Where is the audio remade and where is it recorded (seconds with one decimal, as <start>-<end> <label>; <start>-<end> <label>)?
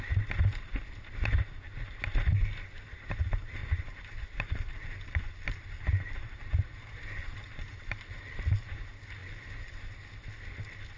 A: 0.0-3.6 recorded; 3.6-8.4 remade; 8.4-11.0 recorded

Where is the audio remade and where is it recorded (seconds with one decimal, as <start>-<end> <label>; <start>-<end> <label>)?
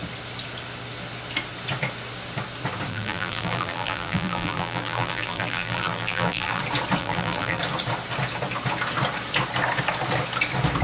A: 0.0-2.9 recorded; 2.9-6.6 remade; 6.6-7.0 recorded; 7.0-7.6 remade; 7.6-10.8 recorded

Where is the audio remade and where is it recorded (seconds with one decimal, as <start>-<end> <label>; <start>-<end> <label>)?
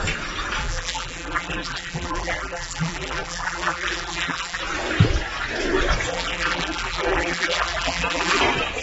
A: 0.0-0.6 recorded; 0.6-4.6 remade; 4.6-6.1 recorded; 6.1-8.4 remade; 8.4-8.8 recorded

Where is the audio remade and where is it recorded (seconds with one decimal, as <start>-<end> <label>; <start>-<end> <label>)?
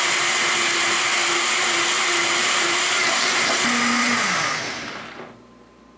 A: 0.0-2.4 recorded; 2.4-3.5 remade; 3.5-6.0 recorded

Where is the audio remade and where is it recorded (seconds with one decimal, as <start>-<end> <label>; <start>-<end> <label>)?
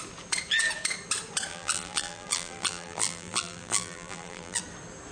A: 0.0-1.5 recorded; 1.5-4.6 remade; 4.6-5.1 recorded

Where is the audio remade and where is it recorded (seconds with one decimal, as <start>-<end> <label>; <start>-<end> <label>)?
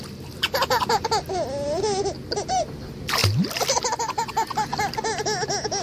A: 0.0-5.8 recorded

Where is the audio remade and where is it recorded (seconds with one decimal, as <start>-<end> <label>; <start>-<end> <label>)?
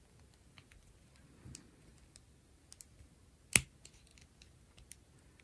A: 0.0-5.4 recorded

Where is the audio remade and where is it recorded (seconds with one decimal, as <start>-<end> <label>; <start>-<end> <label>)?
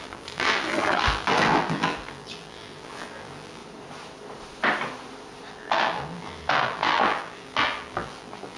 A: 0.0-3.6 remade; 3.6-5.5 recorded; 5.5-8.6 remade